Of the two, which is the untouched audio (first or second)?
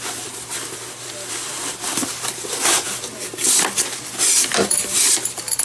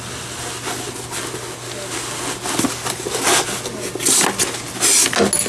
second